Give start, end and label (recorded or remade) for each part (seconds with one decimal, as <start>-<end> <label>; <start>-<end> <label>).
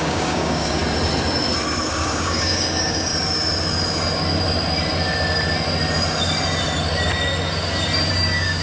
0.0-0.8 remade; 0.8-1.9 recorded; 1.9-3.1 remade; 3.1-8.1 recorded; 8.1-8.6 remade